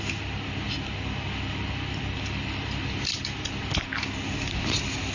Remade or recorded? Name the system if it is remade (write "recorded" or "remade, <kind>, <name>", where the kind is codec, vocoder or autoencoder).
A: recorded